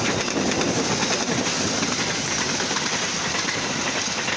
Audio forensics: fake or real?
real